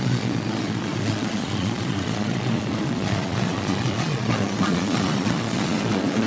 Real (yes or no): no